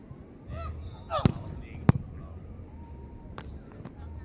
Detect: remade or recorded remade